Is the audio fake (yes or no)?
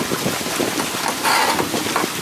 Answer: no